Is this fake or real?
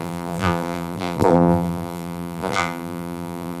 fake